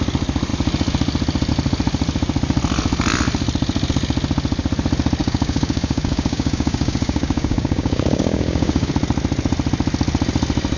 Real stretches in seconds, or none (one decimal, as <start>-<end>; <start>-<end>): 0.0-5.2; 8.9-10.8